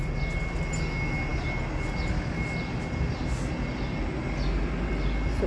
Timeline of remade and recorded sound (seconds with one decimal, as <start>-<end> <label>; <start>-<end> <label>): 0.0-5.5 recorded